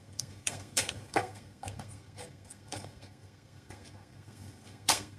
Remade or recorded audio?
remade